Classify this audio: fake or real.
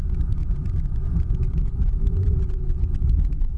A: fake